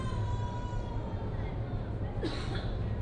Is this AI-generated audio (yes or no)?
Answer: no